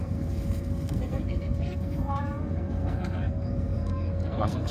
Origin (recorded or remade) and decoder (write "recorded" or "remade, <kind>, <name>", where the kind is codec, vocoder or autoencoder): remade, codec, SNAC